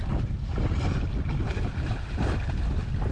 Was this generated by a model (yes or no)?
no